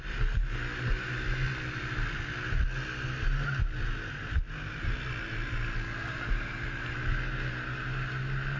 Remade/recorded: recorded